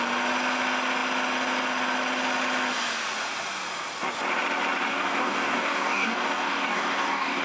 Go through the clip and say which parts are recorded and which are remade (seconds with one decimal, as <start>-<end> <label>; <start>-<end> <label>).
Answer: 0.0-4.9 recorded; 4.9-7.4 remade